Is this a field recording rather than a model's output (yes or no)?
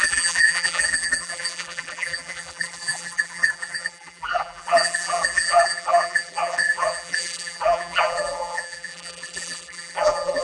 no